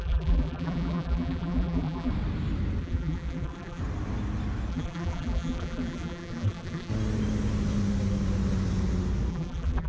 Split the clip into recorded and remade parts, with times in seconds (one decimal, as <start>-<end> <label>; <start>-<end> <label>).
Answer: 0.0-2.1 remade; 2.1-2.8 recorded; 2.8-3.8 remade; 3.8-4.7 recorded; 4.7-6.9 remade; 6.9-9.3 recorded; 9.3-9.9 remade